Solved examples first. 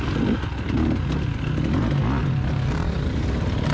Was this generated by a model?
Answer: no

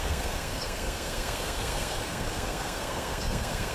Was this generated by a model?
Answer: yes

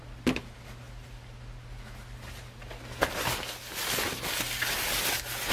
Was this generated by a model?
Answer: no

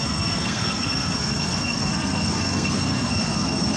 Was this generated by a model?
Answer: yes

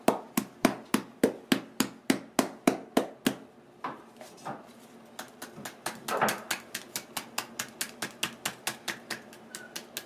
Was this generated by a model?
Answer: no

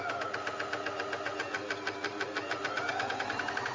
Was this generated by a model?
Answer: no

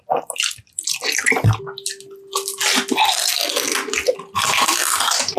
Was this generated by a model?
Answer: no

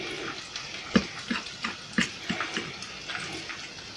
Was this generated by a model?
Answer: no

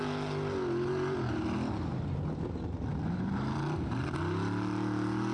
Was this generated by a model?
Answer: no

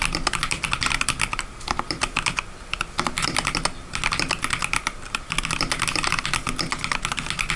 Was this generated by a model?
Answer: no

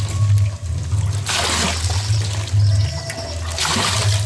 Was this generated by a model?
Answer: no